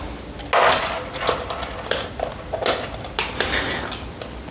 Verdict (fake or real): real